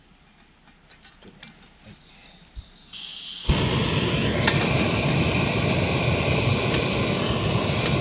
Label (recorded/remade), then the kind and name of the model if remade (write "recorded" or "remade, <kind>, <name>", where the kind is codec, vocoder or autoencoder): recorded